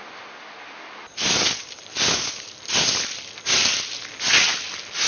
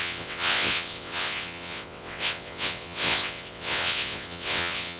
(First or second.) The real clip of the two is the first